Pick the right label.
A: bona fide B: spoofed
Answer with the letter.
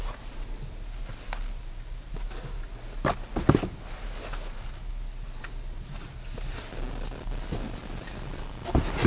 A